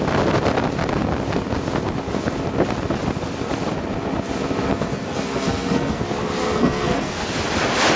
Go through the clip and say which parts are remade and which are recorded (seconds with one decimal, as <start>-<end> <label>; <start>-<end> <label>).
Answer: 0.0-4.7 recorded; 4.7-6.0 remade; 6.0-6.4 recorded; 6.4-7.2 remade; 7.2-8.0 recorded